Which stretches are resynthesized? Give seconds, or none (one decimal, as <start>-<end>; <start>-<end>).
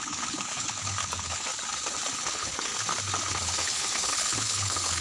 0.0-1.5; 2.2-2.7; 3.3-5.0